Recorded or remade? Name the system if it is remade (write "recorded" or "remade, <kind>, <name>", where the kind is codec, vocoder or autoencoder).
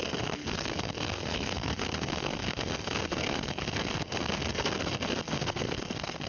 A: remade, codec, SNAC